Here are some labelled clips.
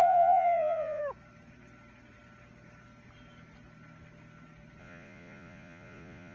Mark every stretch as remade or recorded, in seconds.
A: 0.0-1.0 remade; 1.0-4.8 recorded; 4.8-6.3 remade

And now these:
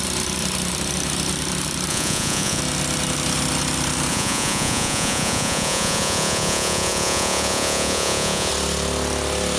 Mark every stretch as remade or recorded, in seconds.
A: 0.0-1.9 recorded; 1.9-2.6 remade; 2.6-4.1 recorded; 4.1-8.5 remade; 8.5-9.6 recorded

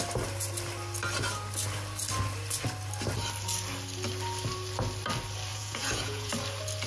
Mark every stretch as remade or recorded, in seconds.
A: 0.0-5.5 recorded; 5.5-6.3 remade; 6.3-6.9 recorded

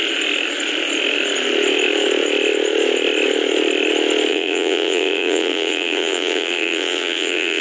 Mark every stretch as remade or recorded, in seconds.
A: 0.0-4.3 recorded; 4.3-7.6 remade

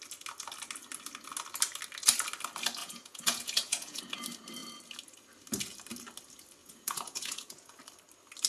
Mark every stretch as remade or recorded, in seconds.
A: 0.0-2.8 recorded; 2.8-4.0 remade; 4.0-6.6 recorded; 6.6-7.8 remade; 7.8-8.5 recorded